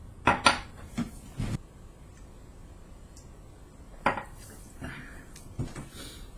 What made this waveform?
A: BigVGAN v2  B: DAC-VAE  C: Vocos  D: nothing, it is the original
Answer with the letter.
D